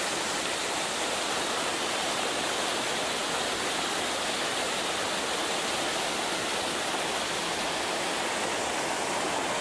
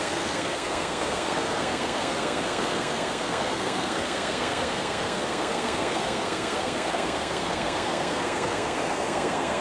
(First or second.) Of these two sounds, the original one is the first